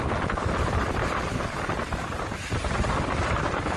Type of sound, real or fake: real